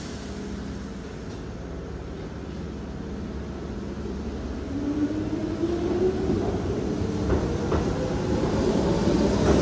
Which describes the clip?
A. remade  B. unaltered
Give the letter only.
B